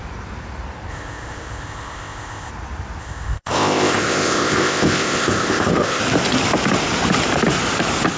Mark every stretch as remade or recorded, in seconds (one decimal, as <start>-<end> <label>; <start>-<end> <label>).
0.0-0.9 recorded; 0.9-2.5 remade; 2.5-3.0 recorded; 3.0-6.0 remade; 6.0-8.2 recorded